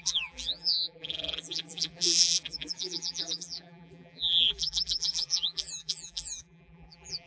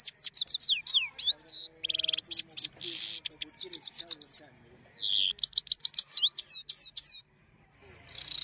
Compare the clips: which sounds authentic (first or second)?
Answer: second